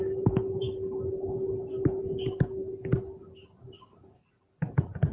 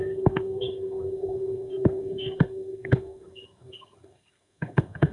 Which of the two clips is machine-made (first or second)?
second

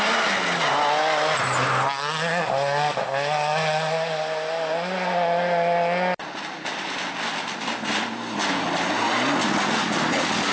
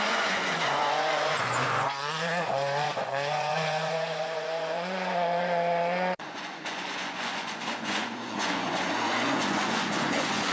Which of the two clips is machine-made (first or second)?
second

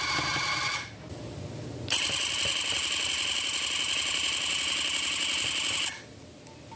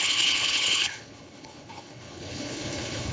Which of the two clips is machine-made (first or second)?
second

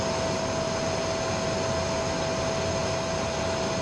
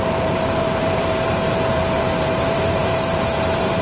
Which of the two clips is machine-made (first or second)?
second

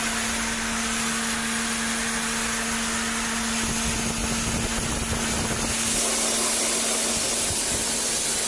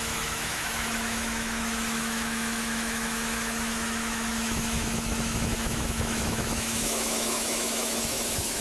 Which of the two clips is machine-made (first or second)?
second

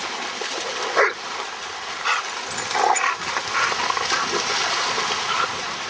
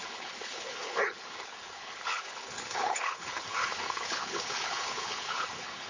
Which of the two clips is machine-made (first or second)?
second